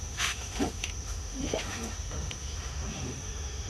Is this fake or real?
fake